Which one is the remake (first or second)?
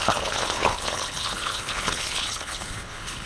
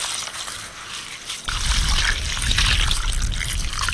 first